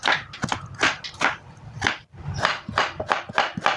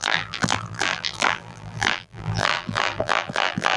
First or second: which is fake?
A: second